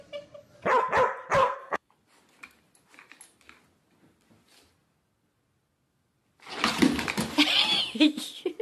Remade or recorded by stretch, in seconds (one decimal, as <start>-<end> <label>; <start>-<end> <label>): 0.0-1.4 recorded; 1.4-1.9 remade; 1.9-8.6 recorded